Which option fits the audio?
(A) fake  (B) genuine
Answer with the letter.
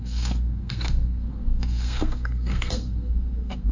A